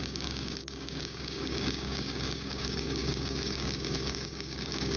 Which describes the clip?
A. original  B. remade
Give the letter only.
B